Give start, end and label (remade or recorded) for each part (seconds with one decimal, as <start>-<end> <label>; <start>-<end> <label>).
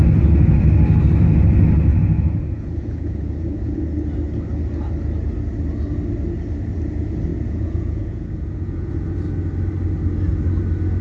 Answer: 0.0-1.9 recorded; 1.9-3.8 remade; 3.8-7.3 recorded; 7.3-8.9 remade; 8.9-11.0 recorded